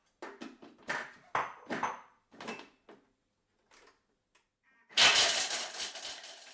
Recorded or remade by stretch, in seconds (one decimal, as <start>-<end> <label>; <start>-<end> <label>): 0.0-6.5 recorded